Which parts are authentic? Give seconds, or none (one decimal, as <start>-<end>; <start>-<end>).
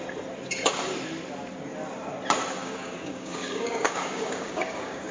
0.0-2.6